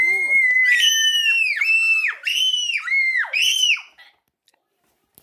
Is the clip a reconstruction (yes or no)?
no